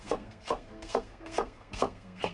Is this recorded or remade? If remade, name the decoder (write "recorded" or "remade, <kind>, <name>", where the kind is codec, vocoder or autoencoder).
remade, codec, SNAC